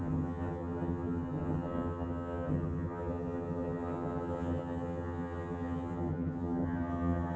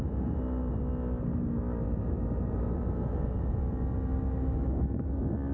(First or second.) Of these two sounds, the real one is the second